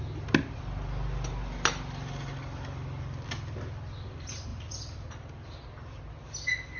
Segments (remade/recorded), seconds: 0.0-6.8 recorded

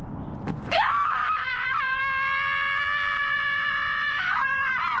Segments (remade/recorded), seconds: 0.0-0.5 recorded; 0.5-2.0 remade; 2.0-3.2 recorded; 3.2-5.0 remade

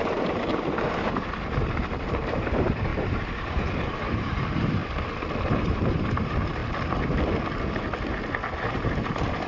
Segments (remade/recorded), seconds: 0.0-4.8 remade; 4.8-5.4 recorded; 5.4-6.6 remade; 6.6-8.6 recorded; 8.6-9.5 remade

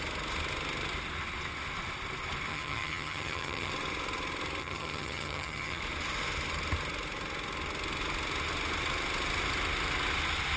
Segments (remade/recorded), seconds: 0.0-2.5 recorded; 2.5-3.7 remade; 3.7-4.6 recorded; 4.6-5.8 remade; 5.8-10.6 recorded

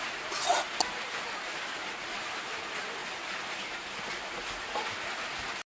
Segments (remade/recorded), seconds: 0.0-5.8 recorded

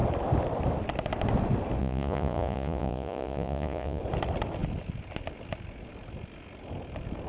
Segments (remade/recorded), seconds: 0.0-1.8 recorded; 1.8-4.0 remade; 4.0-7.3 recorded

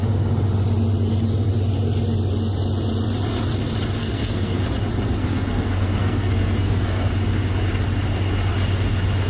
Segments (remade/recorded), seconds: 0.0-4.0 recorded; 4.0-4.6 remade; 4.6-5.2 recorded; 5.2-7.1 remade; 7.1-9.3 recorded